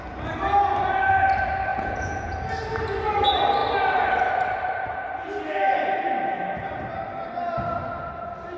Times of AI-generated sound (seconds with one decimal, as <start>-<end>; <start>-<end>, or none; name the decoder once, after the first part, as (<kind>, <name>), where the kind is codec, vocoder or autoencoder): 1.7-2.5 (vocoder, Vocos)